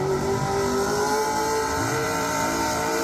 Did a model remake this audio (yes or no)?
yes